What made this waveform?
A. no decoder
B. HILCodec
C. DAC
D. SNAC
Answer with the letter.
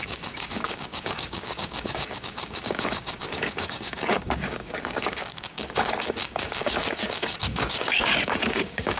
C